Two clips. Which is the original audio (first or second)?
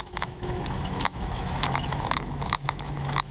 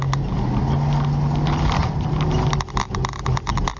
second